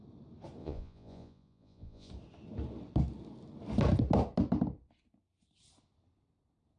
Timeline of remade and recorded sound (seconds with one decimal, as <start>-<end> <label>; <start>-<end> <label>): 0.0-0.6 recorded; 0.6-2.1 remade; 2.1-6.8 recorded